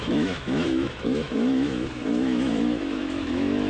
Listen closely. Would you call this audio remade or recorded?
remade